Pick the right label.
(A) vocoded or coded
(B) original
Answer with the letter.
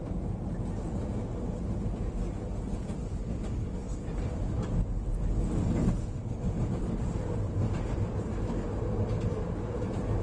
B